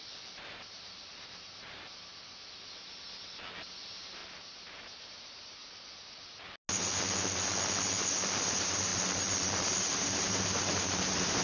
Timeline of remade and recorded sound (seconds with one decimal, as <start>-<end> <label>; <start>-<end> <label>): 0.0-2.1 remade; 2.1-3.6 recorded; 3.6-4.2 remade; 4.2-4.7 recorded; 4.7-5.6 remade; 5.6-8.5 recorded; 8.5-8.9 remade; 8.9-9.8 recorded; 9.8-11.4 remade